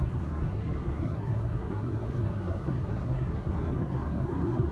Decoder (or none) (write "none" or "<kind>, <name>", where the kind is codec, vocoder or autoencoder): codec, SNAC